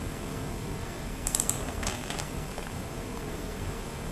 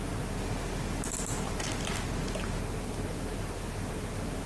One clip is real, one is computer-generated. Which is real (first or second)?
second